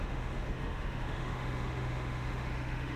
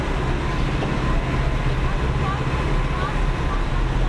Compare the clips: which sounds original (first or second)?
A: second